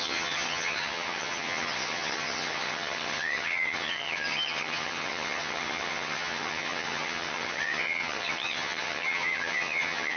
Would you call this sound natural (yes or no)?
no